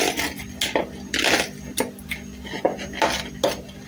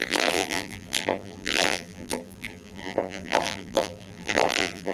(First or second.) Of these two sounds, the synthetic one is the second